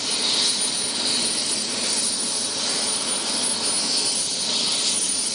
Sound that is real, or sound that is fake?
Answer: real